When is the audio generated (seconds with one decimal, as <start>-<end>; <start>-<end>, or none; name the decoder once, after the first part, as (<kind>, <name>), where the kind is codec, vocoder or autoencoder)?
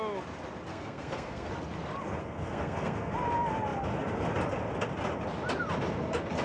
0.7-1.5 (codec, SNAC); 2.2-3.1